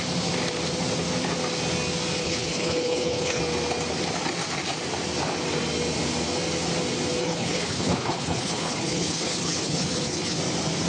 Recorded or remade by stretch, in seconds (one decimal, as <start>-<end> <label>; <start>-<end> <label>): 0.0-2.2 recorded; 2.2-3.4 remade; 3.4-7.2 recorded; 7.2-10.4 remade; 10.4-10.9 recorded